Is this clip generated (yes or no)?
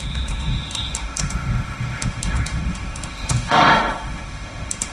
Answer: yes